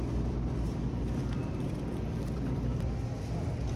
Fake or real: real